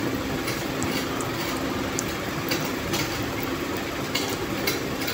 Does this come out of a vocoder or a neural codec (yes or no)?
no